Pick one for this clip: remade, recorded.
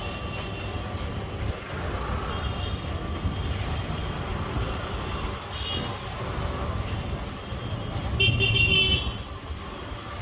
recorded